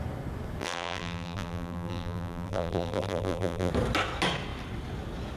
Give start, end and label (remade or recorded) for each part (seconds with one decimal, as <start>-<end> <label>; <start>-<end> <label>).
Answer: 0.0-0.6 recorded; 0.6-3.7 remade; 3.7-5.4 recorded